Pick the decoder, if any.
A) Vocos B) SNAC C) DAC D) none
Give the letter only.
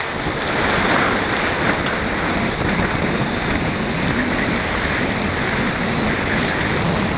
D